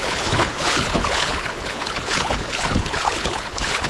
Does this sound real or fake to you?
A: fake